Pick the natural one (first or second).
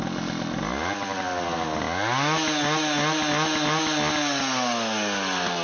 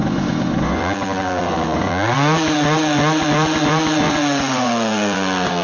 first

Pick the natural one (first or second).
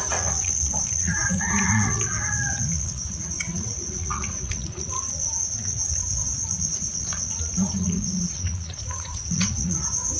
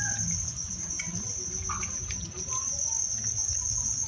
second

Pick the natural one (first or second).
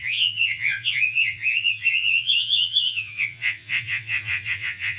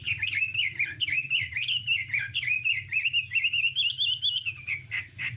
second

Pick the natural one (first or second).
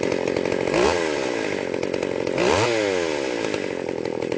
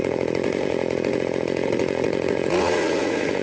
first